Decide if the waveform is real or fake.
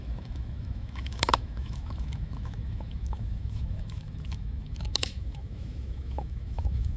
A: fake